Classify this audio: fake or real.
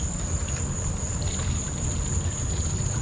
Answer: real